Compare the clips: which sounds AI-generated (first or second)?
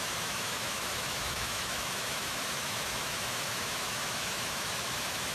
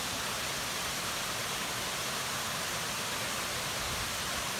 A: first